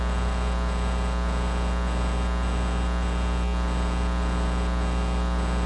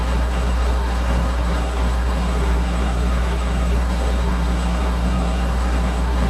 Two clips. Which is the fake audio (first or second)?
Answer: second